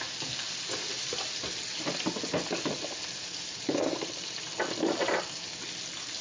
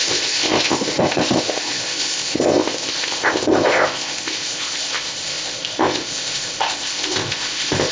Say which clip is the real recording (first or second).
first